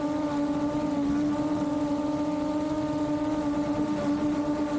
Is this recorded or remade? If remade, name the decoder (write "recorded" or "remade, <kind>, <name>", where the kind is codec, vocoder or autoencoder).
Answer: recorded